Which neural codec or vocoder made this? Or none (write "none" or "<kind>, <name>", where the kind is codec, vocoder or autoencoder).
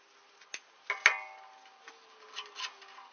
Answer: none